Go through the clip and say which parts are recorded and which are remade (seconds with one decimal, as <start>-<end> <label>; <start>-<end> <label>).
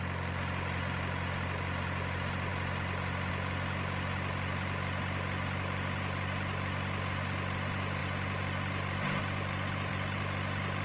0.0-10.8 recorded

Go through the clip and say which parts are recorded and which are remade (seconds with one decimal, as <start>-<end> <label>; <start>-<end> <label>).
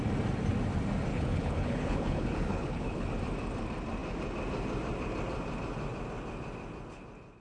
0.0-1.1 recorded; 1.1-3.1 remade; 3.1-7.4 recorded